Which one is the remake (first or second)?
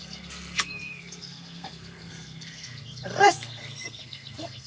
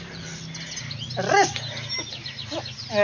first